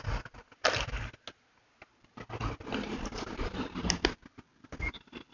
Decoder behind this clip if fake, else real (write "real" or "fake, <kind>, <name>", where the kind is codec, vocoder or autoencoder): real